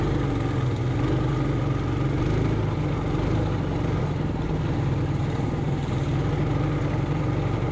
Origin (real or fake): real